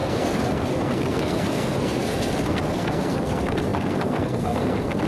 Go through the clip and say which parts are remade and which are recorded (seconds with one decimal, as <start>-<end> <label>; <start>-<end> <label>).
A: 0.0-5.1 remade